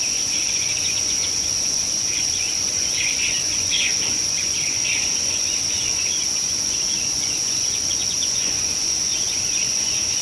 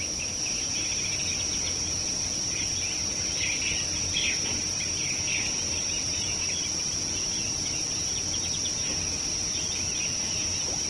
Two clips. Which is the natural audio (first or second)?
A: second